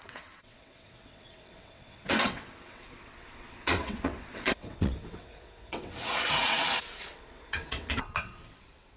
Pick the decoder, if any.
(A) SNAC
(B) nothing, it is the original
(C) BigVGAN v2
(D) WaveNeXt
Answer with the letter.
D